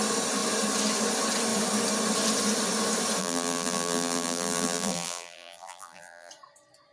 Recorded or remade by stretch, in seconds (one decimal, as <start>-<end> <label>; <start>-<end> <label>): 0.0-3.2 recorded; 3.2-6.3 remade; 6.3-6.9 recorded